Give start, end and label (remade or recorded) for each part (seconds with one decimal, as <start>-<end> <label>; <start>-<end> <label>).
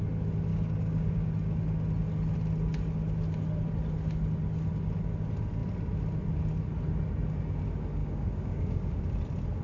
0.0-0.5 recorded; 0.5-1.3 remade; 1.3-8.0 recorded; 8.0-9.0 remade; 9.0-9.6 recorded